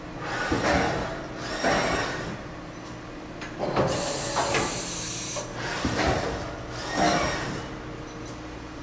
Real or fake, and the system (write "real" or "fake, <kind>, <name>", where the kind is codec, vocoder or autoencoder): real